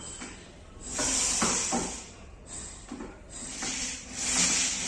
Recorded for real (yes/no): yes